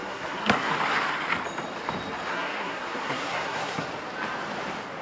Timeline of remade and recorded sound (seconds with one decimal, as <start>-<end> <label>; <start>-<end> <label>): 0.0-0.7 remade; 0.7-2.3 recorded; 2.3-3.9 remade; 3.9-5.0 recorded